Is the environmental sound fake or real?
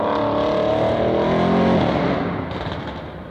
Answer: real